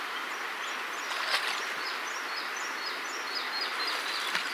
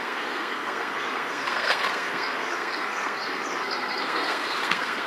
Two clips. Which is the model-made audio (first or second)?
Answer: second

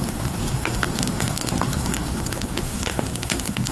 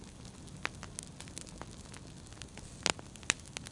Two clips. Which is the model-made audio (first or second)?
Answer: first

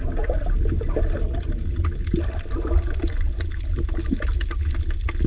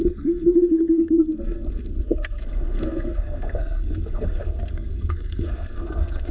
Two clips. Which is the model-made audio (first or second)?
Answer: second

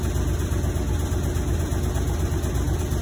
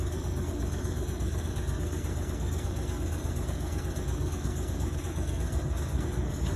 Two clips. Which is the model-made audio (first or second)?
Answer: second